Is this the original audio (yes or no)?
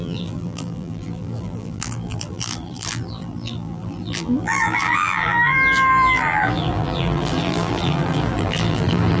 no